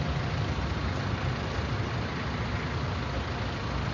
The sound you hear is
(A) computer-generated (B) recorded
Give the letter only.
B